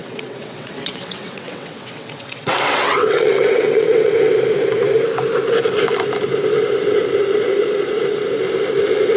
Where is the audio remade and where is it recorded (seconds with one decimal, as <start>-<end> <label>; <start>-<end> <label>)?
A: 0.0-4.3 remade; 4.3-9.2 recorded